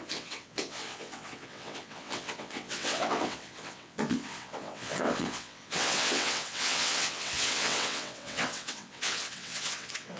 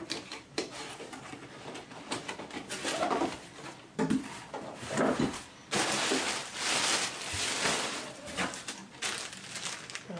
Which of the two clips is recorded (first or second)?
second